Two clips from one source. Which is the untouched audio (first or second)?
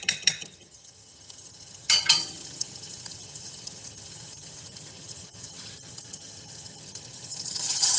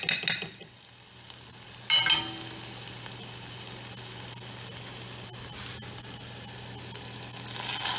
second